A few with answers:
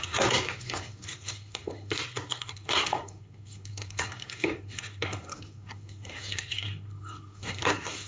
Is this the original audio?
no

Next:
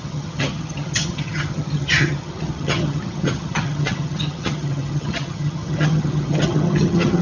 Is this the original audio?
no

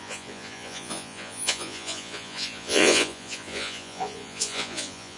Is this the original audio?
no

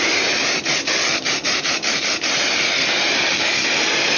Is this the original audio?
yes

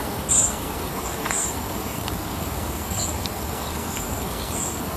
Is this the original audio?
no